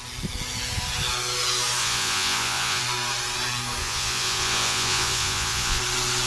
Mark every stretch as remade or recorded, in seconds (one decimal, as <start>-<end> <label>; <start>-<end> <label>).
0.0-1.8 recorded; 1.8-2.8 remade; 2.8-3.8 recorded; 3.8-5.8 remade; 5.8-6.3 recorded